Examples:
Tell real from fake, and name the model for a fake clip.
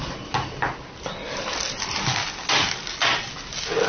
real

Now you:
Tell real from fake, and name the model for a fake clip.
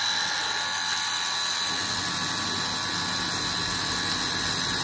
real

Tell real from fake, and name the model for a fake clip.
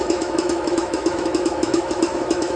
fake, autoencoder, DAC-VAE